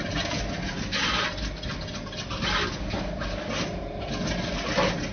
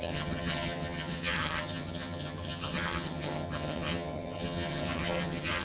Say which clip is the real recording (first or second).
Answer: first